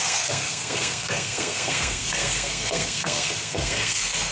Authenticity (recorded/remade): remade